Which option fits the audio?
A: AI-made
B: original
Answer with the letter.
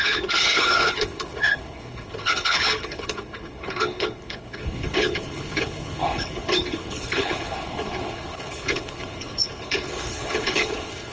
A